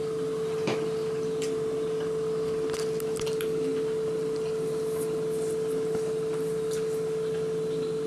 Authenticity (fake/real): real